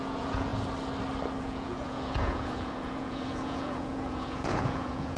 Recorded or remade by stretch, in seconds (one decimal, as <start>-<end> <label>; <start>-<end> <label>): 0.0-0.5 remade; 0.5-1.4 recorded; 1.4-5.2 remade